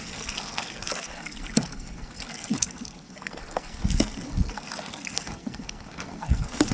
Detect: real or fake fake